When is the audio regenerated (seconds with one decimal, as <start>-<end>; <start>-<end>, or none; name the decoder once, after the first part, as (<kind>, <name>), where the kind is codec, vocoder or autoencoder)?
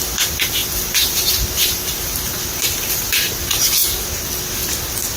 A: 0.0-3.8 (vocoder, BigVGAN v2)